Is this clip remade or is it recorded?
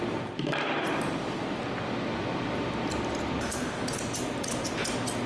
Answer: recorded